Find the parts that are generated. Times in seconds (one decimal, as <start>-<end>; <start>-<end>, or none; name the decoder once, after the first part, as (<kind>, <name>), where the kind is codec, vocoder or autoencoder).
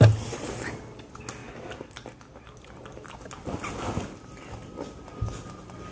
none